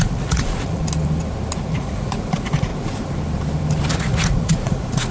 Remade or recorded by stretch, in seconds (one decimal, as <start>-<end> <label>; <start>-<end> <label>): 0.0-0.8 remade; 0.8-1.7 recorded; 1.7-2.7 remade; 2.7-3.9 recorded; 3.9-5.1 remade

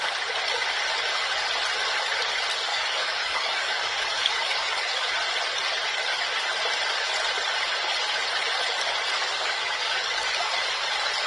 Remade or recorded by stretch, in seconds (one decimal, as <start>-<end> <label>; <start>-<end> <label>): 0.0-2.7 recorded; 2.7-5.1 remade; 5.1-9.3 recorded; 9.3-10.5 remade; 10.5-11.3 recorded

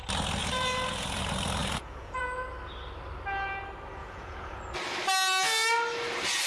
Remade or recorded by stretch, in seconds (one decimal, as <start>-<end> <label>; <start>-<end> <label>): 0.0-0.4 recorded; 0.4-1.2 remade; 1.2-1.6 recorded; 1.6-2.2 remade; 2.2-4.0 recorded; 4.0-4.6 remade; 4.6-6.5 recorded

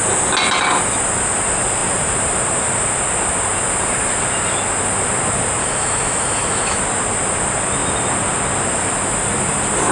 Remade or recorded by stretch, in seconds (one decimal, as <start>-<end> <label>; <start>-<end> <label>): 0.0-5.6 recorded; 5.6-6.8 remade; 6.8-9.9 recorded

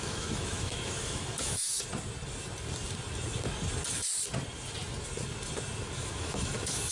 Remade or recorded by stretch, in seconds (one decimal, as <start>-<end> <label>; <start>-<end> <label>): 0.0-1.9 remade; 1.9-6.0 recorded; 6.0-6.9 remade

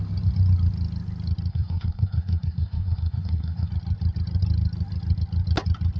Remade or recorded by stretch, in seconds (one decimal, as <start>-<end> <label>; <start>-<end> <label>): 0.0-1.5 recorded; 1.5-3.7 remade; 3.7-6.0 recorded

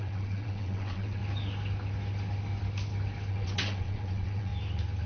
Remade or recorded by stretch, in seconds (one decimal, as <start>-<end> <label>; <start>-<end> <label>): 0.0-1.2 remade; 1.2-3.3 recorded; 3.3-4.5 remade; 4.5-5.1 recorded